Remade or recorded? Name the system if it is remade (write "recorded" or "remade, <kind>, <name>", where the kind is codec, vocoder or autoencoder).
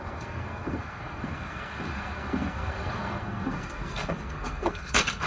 remade, codec, SNAC